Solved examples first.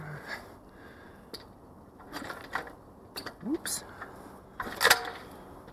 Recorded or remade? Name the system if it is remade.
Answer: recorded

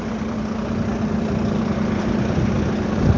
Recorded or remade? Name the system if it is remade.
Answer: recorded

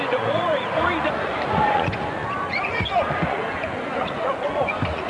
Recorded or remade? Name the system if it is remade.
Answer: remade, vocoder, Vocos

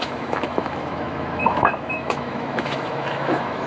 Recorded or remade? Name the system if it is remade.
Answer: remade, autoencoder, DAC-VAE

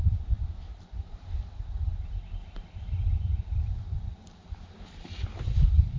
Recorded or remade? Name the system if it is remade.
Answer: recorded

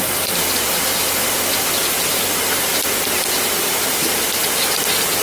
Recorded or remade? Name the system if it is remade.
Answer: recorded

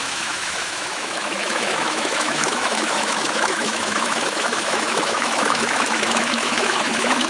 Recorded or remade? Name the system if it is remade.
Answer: remade, autoencoder, DAC-VAE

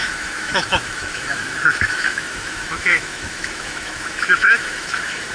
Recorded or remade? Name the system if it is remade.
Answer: remade, autoencoder, DAC-VAE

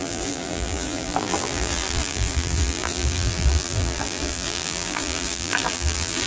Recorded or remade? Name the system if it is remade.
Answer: remade, vocoder, BigVGAN v2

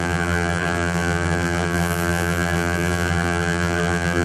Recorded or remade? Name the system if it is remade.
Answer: remade, vocoder, BigVGAN v2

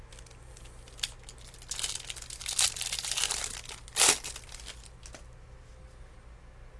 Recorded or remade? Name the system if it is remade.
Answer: recorded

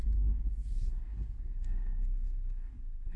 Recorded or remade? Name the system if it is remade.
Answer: remade, codec, SNAC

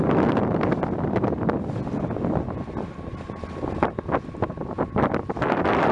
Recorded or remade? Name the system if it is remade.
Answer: recorded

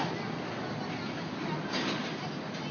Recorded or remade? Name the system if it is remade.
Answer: recorded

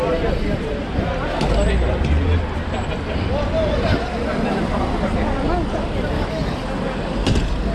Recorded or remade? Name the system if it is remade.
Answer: recorded